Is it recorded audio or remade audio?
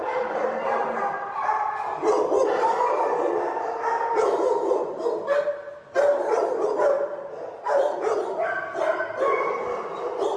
recorded